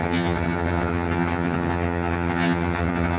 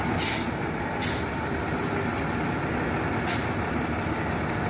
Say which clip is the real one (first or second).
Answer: second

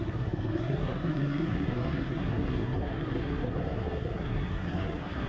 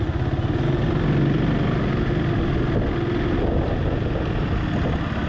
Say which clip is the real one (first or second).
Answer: second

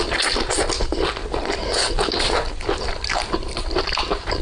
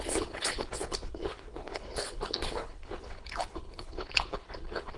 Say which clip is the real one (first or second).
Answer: first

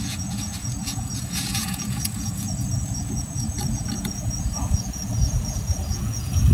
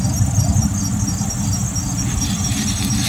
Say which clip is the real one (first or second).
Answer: second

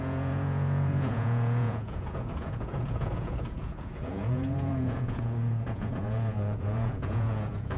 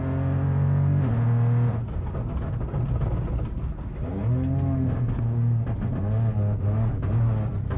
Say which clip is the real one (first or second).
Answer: second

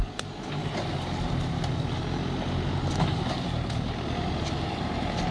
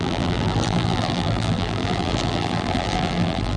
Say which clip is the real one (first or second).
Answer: first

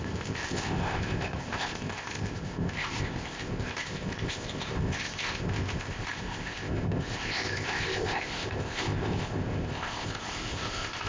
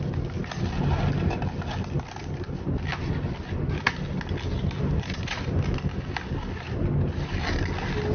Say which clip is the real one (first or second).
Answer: second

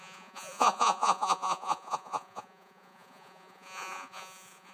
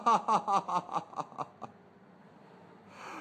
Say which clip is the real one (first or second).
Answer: second